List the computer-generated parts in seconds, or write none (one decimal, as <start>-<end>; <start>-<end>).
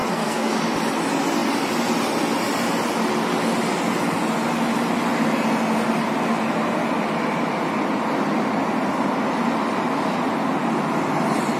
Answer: 0.0-0.5